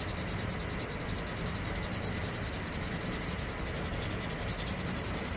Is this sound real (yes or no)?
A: yes